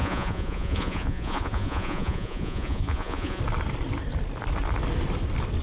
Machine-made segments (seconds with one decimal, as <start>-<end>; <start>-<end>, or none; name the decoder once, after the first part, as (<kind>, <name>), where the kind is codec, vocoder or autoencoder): 0.0-3.4 (vocoder, Vocos)